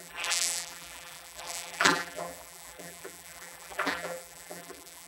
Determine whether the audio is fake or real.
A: fake